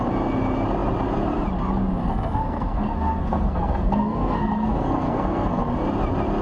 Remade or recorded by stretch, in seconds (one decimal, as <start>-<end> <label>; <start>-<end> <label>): 0.0-2.0 recorded; 2.0-5.6 remade; 5.6-6.4 recorded